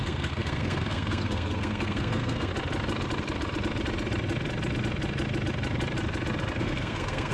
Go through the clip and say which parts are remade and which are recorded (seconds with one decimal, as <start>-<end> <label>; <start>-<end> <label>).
0.0-2.5 remade; 2.5-6.6 recorded; 6.6-7.3 remade

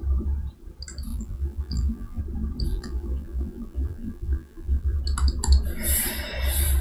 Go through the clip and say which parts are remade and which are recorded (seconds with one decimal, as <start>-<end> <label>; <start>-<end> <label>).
0.0-1.1 recorded; 1.1-2.2 remade; 2.2-2.7 recorded; 2.7-5.0 remade; 5.0-6.8 recorded

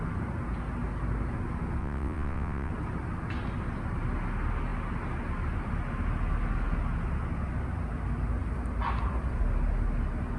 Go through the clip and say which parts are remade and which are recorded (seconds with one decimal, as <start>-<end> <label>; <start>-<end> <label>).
0.0-1.8 recorded; 1.8-2.7 remade; 2.7-10.4 recorded

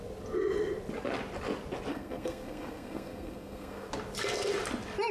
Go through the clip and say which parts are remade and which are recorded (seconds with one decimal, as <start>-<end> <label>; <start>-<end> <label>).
0.0-1.9 recorded; 1.9-3.9 remade; 3.9-5.1 recorded

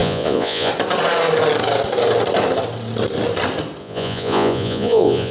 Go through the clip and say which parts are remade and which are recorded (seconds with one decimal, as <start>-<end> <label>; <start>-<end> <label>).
0.0-0.7 remade; 0.7-3.8 recorded; 3.8-5.3 remade

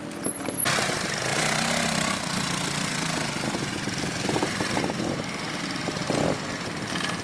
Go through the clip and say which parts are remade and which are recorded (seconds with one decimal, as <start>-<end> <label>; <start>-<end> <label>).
0.0-7.2 recorded

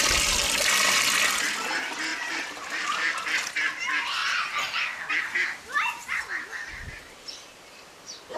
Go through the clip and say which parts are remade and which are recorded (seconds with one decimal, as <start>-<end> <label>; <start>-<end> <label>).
0.0-2.1 recorded; 2.1-3.2 remade; 3.2-8.4 recorded

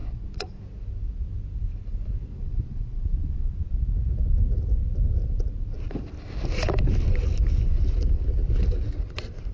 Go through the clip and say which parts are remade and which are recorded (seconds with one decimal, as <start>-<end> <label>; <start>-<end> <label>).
0.0-0.6 remade; 0.6-2.3 recorded; 2.3-3.6 remade; 3.6-9.5 recorded